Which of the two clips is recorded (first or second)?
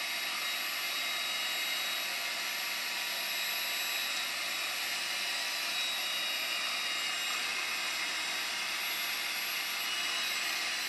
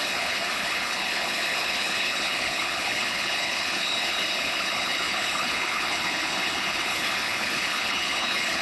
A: first